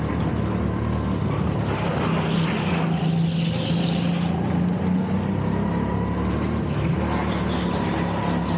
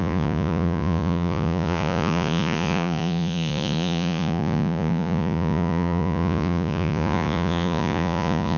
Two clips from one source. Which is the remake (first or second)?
second